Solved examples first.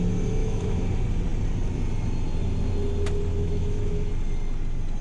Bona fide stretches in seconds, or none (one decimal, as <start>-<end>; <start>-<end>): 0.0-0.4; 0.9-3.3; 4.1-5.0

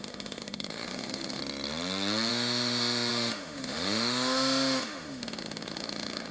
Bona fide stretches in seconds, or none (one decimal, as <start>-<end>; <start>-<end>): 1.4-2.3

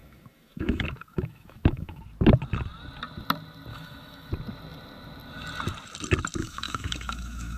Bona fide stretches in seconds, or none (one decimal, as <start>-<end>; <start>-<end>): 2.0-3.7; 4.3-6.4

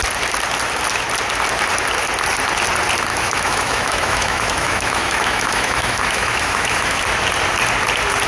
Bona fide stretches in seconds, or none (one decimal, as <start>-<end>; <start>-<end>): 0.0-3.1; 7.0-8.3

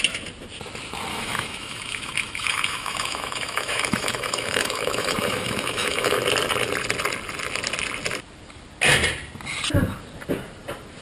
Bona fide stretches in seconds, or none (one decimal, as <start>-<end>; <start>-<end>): 0.0-1.1; 6.2-11.0

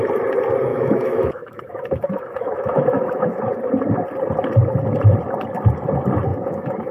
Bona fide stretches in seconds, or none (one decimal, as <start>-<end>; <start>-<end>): 0.0-0.7; 3.4-6.3

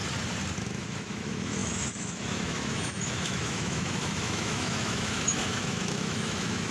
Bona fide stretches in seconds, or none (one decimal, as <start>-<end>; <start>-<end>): 0.0-0.6

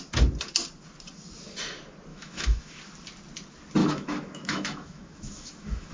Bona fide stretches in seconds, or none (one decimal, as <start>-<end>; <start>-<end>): 0.0-2.1; 2.7-3.8